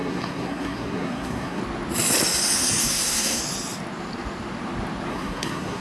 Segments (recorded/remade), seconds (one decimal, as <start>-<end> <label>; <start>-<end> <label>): 0.0-1.6 remade; 1.6-2.8 recorded; 2.8-3.4 remade; 3.4-5.1 recorded; 5.1-5.8 remade